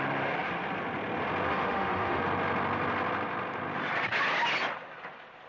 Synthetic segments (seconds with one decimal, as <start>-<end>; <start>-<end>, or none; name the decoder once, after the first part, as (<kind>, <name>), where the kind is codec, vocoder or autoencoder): 1.5-2.2 (autoencoder, DAC-VAE)